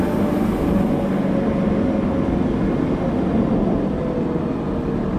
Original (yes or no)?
yes